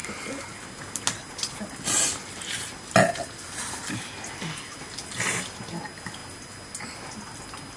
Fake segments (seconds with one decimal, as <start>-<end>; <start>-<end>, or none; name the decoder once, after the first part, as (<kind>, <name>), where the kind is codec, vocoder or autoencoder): none